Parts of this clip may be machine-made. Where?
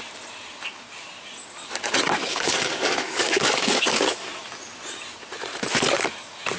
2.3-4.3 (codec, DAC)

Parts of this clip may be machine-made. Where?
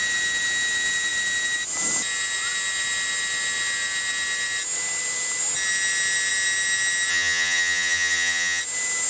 7.1-8.6 (vocoder, HiFi-GAN)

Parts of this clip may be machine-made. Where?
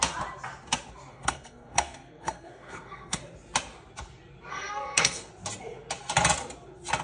1.1-3.2 (codec, SNAC); 4.5-5.3